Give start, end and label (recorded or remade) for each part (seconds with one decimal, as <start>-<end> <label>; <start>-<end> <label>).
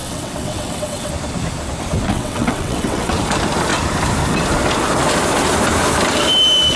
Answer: 0.0-1.1 remade; 1.1-2.1 recorded; 2.1-3.1 remade; 3.1-6.8 recorded